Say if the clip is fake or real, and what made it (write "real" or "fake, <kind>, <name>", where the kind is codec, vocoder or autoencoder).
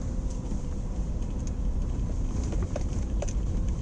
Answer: fake, vocoder, BigVGAN v2